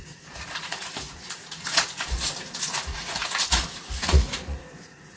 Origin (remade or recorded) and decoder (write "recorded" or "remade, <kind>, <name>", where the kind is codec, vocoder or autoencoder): remade, vocoder, Vocos